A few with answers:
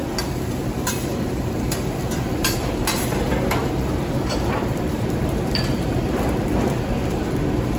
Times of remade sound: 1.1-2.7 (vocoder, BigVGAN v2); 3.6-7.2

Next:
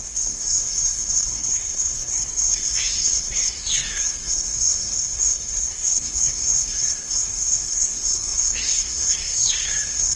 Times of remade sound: 0.0-10.2 (codec, SNAC)

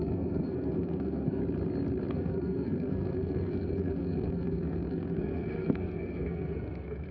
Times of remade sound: 0.0-1.4 (codec, SNAC); 2.1-7.1

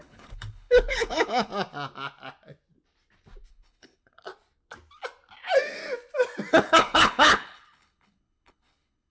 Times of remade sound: 0.0-1.5 (codec, HILCodec); 3.5-4.3; 6.5-9.1

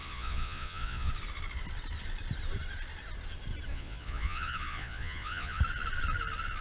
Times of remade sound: 0.0-1.1 (vocoder, Vocos); 3.7-5.6